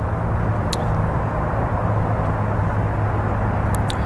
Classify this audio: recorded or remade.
recorded